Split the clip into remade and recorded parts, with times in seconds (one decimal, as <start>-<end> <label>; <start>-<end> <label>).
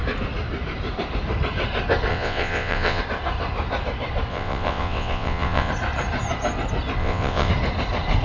0.0-2.1 recorded; 2.1-3.0 remade; 3.0-4.3 recorded; 4.3-5.7 remade; 5.7-7.0 recorded; 7.0-7.5 remade; 7.5-8.2 recorded